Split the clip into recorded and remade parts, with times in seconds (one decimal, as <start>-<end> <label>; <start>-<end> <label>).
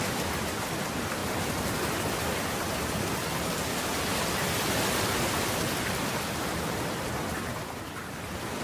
0.0-8.6 recorded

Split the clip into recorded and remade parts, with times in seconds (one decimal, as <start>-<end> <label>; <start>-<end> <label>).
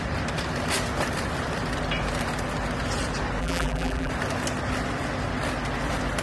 0.0-3.4 recorded; 3.4-4.1 remade; 4.1-6.2 recorded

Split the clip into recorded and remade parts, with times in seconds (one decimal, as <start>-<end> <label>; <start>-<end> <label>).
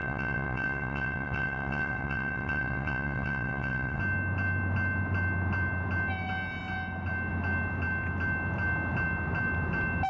0.0-4.0 remade; 4.0-10.1 recorded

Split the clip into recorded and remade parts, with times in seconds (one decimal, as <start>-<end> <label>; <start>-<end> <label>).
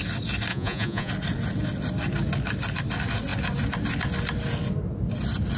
0.0-0.5 recorded; 0.5-1.1 remade; 1.1-5.6 recorded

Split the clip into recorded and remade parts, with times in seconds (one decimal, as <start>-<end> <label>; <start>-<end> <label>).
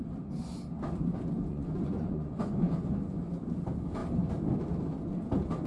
0.0-1.5 recorded; 1.5-3.2 remade; 3.2-5.7 recorded